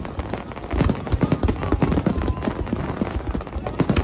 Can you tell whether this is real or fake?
real